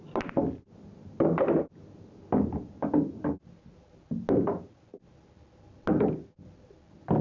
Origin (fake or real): real